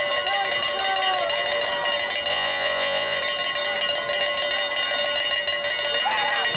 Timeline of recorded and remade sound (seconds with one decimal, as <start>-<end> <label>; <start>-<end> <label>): 0.0-2.3 recorded; 2.3-3.2 remade; 3.2-6.6 recorded